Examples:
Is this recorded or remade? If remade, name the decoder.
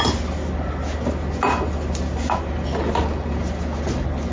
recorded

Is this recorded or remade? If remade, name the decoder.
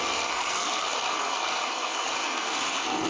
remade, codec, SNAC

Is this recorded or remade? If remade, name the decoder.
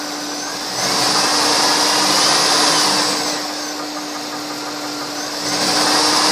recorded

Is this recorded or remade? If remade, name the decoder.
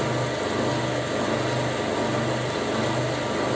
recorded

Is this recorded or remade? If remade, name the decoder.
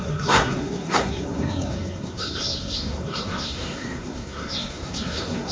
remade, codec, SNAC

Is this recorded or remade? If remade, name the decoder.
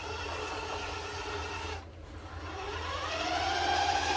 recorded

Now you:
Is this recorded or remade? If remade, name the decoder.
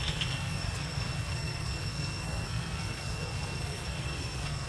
remade, codec, SNAC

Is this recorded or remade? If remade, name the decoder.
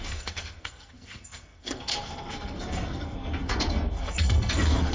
remade, codec, SNAC